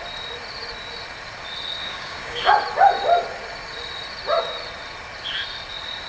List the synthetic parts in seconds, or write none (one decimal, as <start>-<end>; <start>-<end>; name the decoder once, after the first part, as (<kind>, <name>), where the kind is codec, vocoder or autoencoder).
1.8-2.5 (codec, DAC)